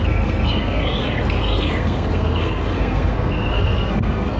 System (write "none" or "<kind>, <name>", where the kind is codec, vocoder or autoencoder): codec, SNAC